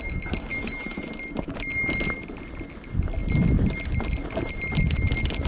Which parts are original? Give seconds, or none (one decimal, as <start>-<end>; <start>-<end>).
0.0-0.5; 1.1-5.5